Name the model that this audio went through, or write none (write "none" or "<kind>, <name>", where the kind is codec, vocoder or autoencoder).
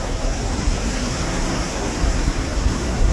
codec, SNAC